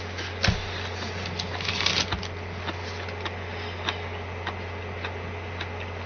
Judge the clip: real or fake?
real